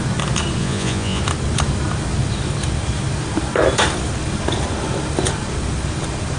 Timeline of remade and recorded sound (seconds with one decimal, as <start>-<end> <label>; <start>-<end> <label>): 0.0-0.6 recorded; 0.6-1.2 remade; 1.2-6.4 recorded